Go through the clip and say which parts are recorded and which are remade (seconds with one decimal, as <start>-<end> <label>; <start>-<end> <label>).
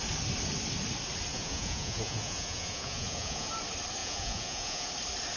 0.0-1.3 recorded; 1.3-3.5 remade; 3.5-4.0 recorded; 4.0-4.9 remade; 4.9-5.4 recorded